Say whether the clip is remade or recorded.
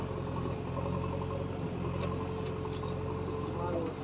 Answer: recorded